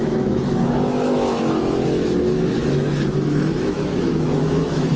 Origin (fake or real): fake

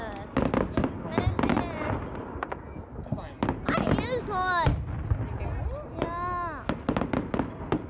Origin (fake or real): real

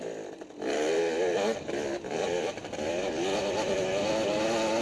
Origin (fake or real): real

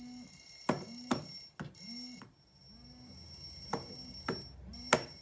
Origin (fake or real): real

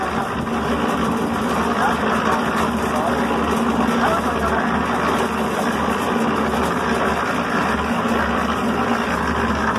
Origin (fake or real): real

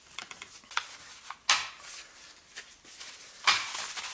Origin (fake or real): real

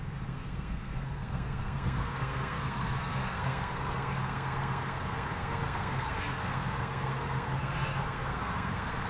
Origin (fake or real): fake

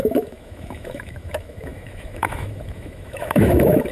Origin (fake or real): fake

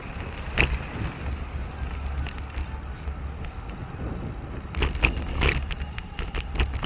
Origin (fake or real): real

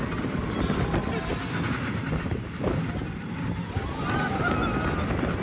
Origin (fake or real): real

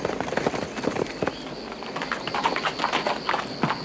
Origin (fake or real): real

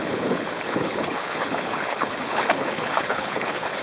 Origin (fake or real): fake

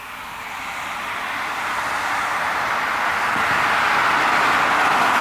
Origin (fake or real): real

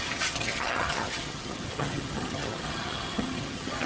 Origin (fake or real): fake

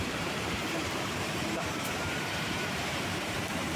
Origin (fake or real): fake